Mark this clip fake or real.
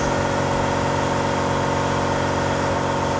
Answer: real